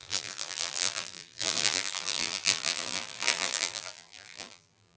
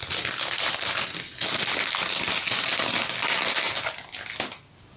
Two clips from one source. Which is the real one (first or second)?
second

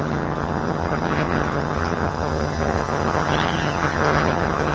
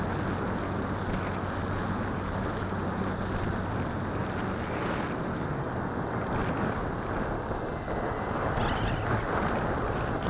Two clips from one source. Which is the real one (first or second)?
second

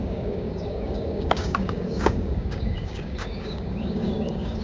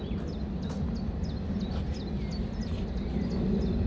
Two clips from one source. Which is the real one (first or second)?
second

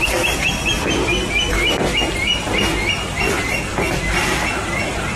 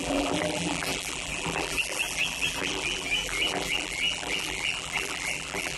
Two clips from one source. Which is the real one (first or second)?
first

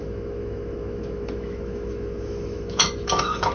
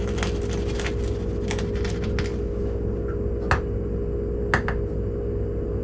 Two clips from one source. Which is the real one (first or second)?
second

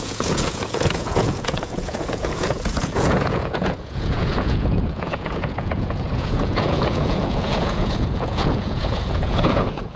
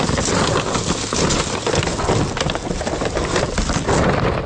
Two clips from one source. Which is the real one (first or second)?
second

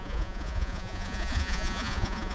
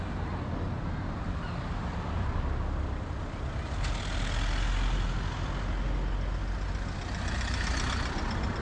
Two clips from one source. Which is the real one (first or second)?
second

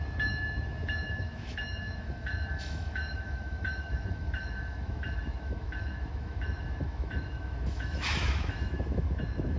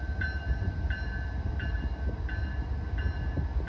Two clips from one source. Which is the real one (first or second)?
second